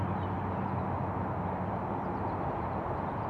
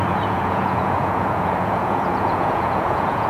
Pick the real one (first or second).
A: first